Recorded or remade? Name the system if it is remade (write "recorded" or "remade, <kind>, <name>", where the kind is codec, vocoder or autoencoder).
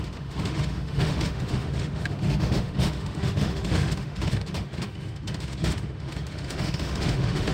remade, autoencoder, DAC-VAE